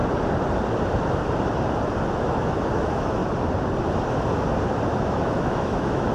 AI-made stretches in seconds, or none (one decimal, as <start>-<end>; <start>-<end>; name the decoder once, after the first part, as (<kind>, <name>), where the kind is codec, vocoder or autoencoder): 2.1-3.2 (autoencoder, DAC-VAE); 5.0-6.1